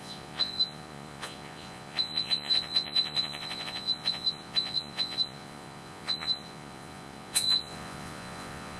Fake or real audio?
fake